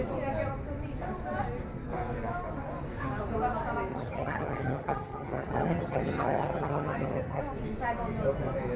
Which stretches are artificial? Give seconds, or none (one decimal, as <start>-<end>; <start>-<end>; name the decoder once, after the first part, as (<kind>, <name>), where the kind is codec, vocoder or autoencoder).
3.9-7.4 (vocoder, HiFi-GAN)